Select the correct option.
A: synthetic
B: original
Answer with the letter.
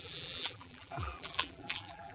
A